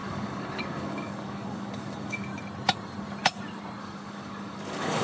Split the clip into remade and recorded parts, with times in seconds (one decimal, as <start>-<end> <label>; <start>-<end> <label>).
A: 0.0-2.3 remade; 2.3-3.8 recorded; 3.8-5.0 remade